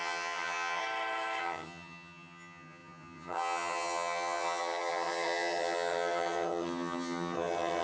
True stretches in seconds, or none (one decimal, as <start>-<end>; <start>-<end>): 0.8-1.4

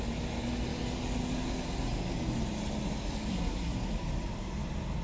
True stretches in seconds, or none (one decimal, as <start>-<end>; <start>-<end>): 0.0-3.3; 3.9-5.0